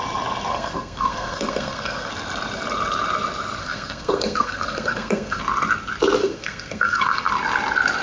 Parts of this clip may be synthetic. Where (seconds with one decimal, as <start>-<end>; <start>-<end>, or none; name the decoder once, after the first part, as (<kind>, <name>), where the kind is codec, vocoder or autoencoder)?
0.5-2.1 (codec, SNAC); 3.6-5.4; 6.2-7.3